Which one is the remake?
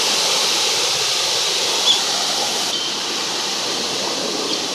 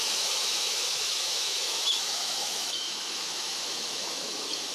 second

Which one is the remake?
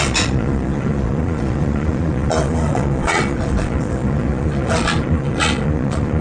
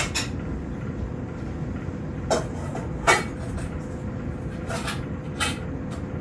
first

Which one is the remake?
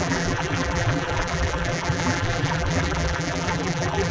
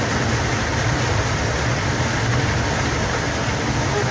first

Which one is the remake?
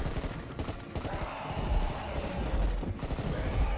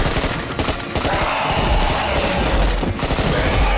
first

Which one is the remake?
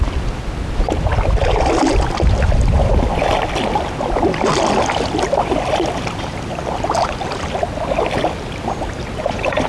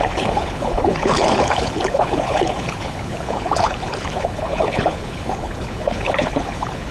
second